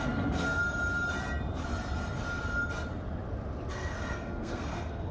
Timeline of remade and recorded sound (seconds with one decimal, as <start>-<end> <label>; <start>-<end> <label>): 0.0-0.6 remade; 0.6-3.7 recorded; 3.7-5.1 remade

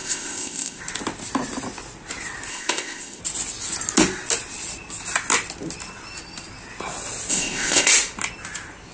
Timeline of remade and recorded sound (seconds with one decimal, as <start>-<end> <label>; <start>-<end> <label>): 0.0-0.8 remade; 0.8-2.5 recorded; 2.5-3.2 remade; 3.2-7.3 recorded; 7.3-7.9 remade; 7.9-8.9 recorded

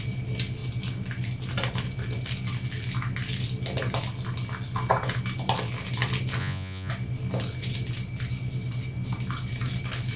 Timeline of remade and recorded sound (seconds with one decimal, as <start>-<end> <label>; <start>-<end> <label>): 0.0-6.4 recorded; 6.4-6.9 remade; 6.9-10.2 recorded